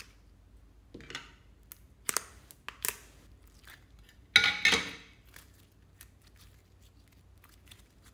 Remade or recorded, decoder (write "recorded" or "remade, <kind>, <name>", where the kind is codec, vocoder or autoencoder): recorded